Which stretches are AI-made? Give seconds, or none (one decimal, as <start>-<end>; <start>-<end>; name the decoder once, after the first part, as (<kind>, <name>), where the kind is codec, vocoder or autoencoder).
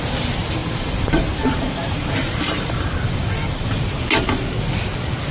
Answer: 0.6-3.8 (vocoder, BigVGAN v2)